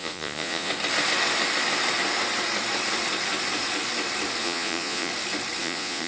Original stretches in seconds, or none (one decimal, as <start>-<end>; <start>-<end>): 0.7-4.4; 5.1-5.6